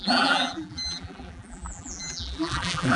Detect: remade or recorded remade